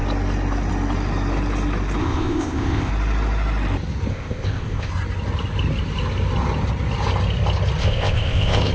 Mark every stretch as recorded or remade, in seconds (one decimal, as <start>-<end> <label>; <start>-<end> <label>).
0.0-2.0 recorded; 2.0-2.9 remade; 2.9-4.1 recorded; 4.1-4.9 remade; 4.9-7.8 recorded; 7.8-8.7 remade